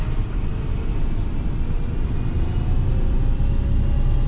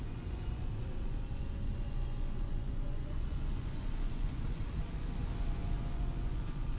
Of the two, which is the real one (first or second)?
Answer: first